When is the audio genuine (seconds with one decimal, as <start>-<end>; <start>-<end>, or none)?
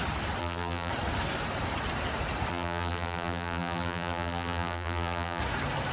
0.0-0.4; 0.9-2.5; 5.4-5.9